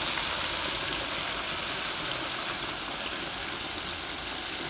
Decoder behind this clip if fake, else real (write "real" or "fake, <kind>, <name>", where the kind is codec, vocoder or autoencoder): real